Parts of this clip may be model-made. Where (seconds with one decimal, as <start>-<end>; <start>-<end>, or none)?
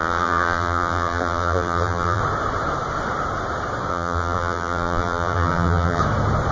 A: 0.0-2.2; 3.9-6.0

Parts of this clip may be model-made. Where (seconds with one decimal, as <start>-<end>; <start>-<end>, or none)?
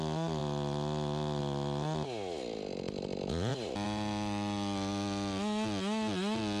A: none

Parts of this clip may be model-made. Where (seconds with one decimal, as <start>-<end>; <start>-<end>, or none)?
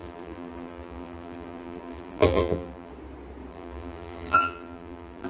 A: 0.0-2.9; 3.5-5.3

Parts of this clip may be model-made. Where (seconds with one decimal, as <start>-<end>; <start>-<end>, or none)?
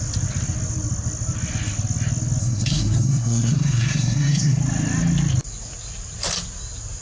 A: 2.4-4.6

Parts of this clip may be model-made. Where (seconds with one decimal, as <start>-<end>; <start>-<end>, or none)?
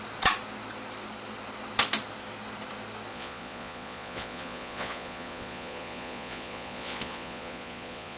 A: 3.1-8.2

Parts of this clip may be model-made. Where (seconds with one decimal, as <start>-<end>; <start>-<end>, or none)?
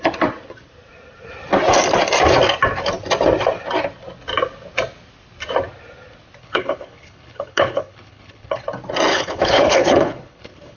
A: 6.4-8.6; 9.1-10.8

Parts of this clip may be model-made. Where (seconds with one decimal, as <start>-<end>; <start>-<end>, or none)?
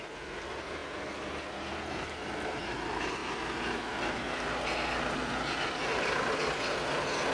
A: none